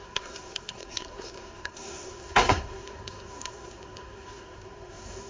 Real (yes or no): no